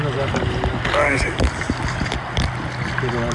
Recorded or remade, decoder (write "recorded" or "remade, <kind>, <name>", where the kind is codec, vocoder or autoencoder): recorded